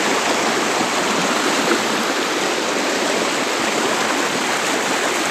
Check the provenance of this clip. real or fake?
real